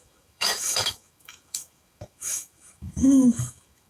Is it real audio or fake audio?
fake